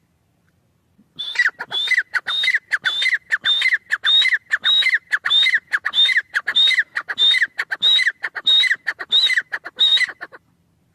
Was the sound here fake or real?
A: real